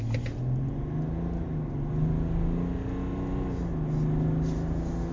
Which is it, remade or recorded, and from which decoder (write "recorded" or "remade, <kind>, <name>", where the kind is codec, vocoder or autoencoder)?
recorded